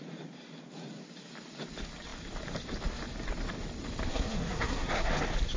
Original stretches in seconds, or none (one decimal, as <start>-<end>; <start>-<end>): 0.0-4.1; 5.1-5.6